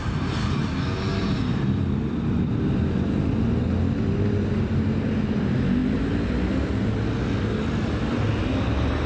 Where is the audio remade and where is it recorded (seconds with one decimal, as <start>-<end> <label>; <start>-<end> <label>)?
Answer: 0.0-0.6 remade; 0.6-1.2 recorded; 1.2-2.1 remade; 2.1-9.1 recorded